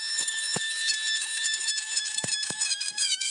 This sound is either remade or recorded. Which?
remade